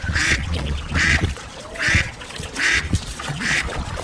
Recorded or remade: remade